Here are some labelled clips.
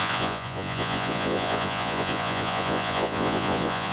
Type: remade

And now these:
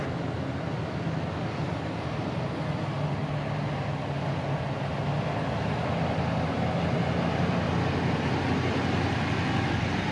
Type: recorded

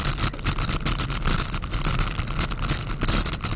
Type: recorded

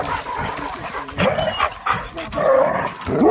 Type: recorded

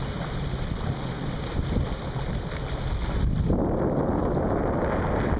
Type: recorded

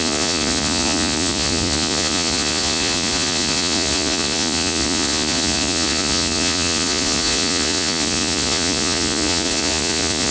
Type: remade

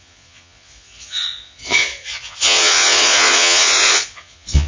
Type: remade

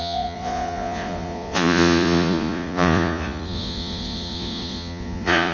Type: remade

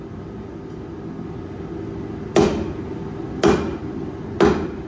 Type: recorded